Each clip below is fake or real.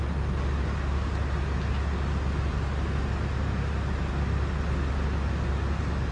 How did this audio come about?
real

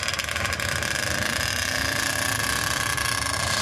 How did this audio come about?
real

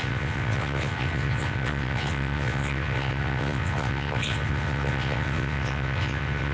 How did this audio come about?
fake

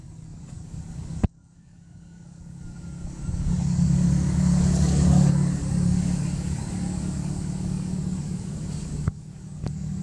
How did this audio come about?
fake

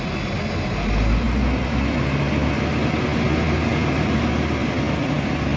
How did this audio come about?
real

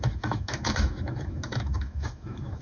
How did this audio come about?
fake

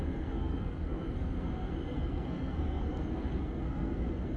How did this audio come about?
fake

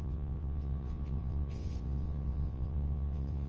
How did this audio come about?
fake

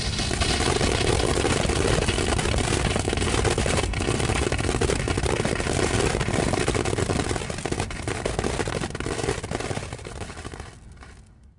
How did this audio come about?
real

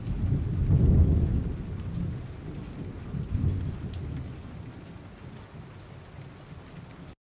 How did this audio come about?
real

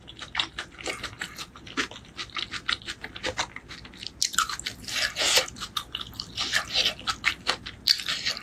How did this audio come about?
real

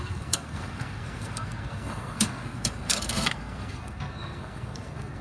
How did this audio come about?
fake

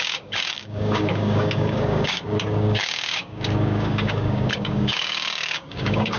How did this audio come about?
fake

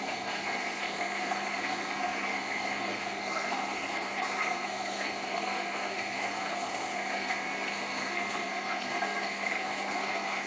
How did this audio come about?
fake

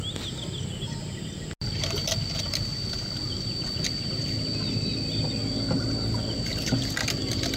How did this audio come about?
real